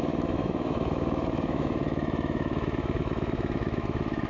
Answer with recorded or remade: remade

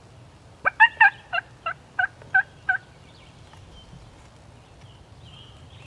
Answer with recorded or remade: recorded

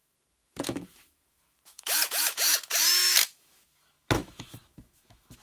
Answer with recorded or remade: remade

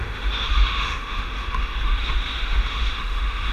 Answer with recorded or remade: remade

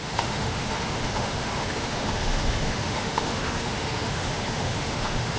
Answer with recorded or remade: remade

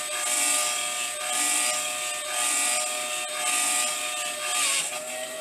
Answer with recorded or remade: recorded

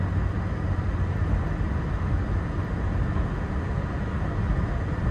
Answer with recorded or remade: recorded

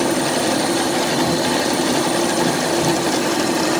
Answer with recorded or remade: recorded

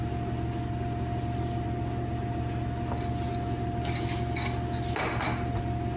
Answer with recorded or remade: recorded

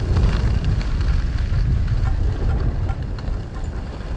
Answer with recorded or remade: recorded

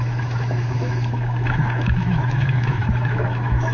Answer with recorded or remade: remade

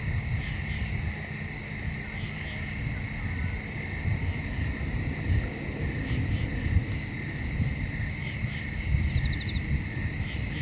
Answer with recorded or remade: recorded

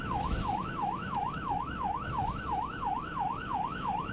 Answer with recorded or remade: remade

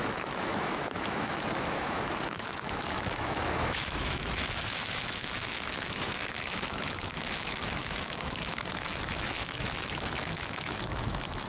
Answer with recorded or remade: remade